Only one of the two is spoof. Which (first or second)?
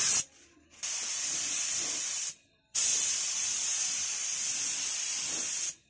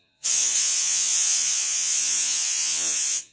second